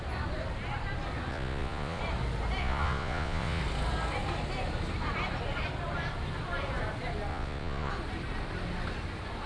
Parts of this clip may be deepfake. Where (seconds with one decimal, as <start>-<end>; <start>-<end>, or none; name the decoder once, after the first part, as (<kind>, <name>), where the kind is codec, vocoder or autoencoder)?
1.3-2.0 (vocoder, Vocos); 2.6-3.6; 7.3-7.9